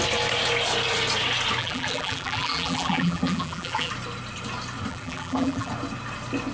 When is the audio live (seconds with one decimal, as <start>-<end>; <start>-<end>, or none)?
0.0-1.6; 3.9-4.9; 5.7-6.5